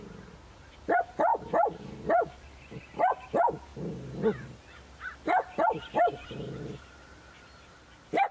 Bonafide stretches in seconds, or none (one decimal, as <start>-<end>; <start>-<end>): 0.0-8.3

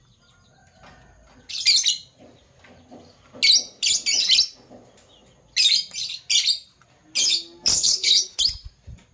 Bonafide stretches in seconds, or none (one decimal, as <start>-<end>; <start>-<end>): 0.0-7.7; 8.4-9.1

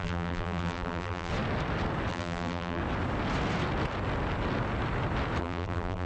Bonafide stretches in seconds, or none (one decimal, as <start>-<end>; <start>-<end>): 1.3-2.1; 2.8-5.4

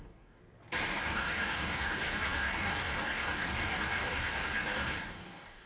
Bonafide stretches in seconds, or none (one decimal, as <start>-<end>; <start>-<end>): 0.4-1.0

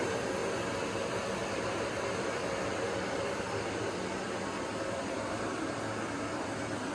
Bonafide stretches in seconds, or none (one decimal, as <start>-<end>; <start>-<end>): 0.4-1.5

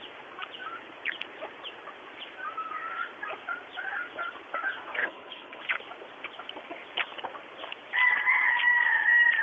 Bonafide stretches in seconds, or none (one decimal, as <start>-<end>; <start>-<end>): 0.0-5.0; 5.6-9.4

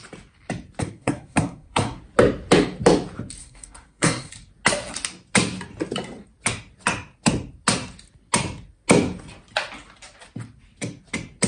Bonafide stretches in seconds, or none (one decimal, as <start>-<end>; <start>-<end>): 0.0-0.8; 2.0-3.4; 4.3-11.5

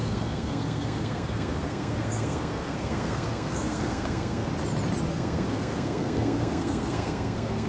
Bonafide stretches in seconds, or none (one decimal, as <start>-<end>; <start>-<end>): 4.5-5.1